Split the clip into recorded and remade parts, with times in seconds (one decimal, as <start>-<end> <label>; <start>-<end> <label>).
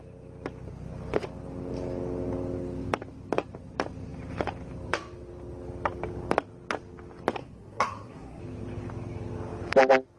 0.0-7.4 recorded; 7.4-8.4 remade; 8.4-10.2 recorded